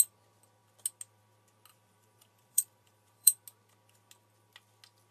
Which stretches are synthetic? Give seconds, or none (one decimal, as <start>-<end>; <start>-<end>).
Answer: 1.7-3.4